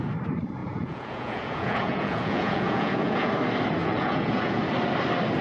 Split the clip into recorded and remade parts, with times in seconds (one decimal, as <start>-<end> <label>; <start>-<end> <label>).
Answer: 0.0-0.6 recorded; 0.6-3.3 remade; 3.3-3.8 recorded; 3.8-4.6 remade; 4.6-5.4 recorded